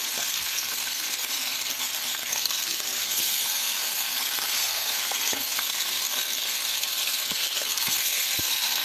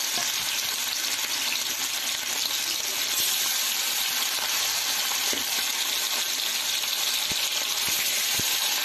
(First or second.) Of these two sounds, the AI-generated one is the first